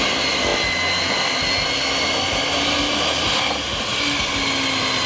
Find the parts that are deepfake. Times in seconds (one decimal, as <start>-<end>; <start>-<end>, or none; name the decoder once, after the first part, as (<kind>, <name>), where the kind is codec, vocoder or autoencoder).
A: none